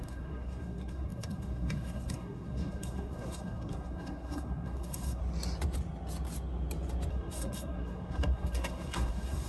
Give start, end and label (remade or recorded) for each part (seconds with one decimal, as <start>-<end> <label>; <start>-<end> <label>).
0.0-5.2 remade; 5.2-7.1 recorded; 7.1-9.5 remade